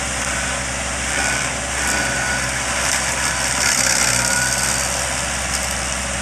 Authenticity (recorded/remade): recorded